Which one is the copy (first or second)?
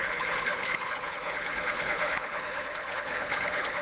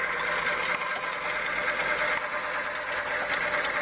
first